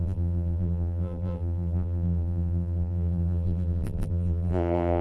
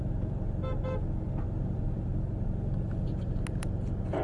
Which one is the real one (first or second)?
second